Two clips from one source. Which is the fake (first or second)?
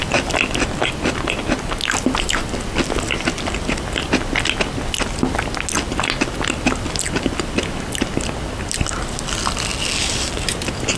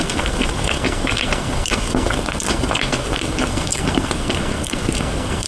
second